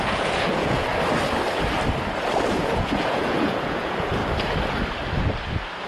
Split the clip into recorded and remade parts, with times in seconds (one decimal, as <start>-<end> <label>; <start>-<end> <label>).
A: 0.0-0.9 remade; 0.9-2.5 recorded; 2.5-4.2 remade; 4.2-5.9 recorded